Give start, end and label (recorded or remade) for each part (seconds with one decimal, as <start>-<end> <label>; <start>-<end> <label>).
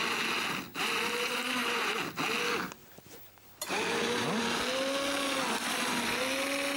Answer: 0.0-0.7 recorded; 0.7-1.9 remade; 1.9-2.8 recorded; 2.8-4.6 remade; 4.6-6.8 recorded